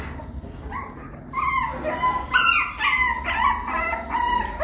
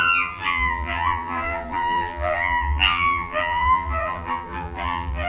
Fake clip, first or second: second